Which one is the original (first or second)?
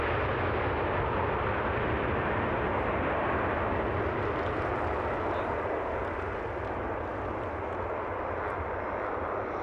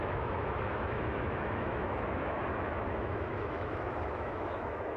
first